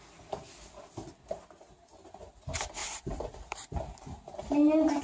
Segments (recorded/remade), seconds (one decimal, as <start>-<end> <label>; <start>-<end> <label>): 0.0-2.8 recorded; 2.8-5.0 remade